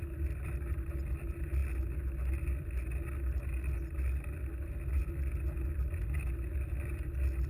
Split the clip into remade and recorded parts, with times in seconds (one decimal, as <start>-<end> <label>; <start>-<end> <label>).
0.0-7.5 recorded